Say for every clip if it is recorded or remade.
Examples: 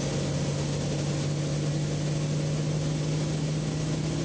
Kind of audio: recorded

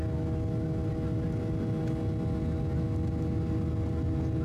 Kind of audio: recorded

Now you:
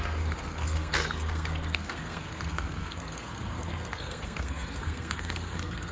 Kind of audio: remade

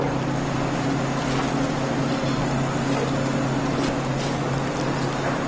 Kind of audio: recorded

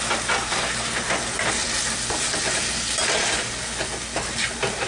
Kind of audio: recorded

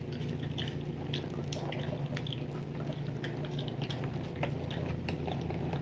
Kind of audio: recorded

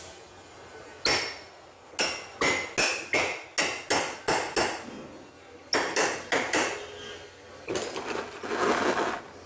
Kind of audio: recorded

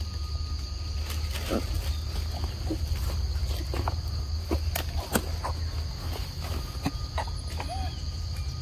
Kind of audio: recorded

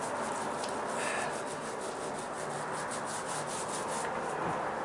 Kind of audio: recorded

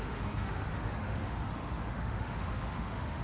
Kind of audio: remade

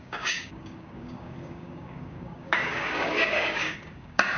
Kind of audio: remade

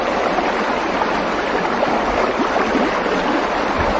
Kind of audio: recorded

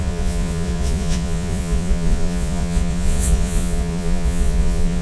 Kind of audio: remade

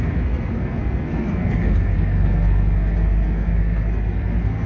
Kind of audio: remade